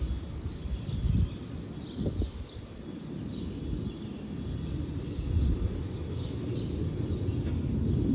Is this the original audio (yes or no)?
yes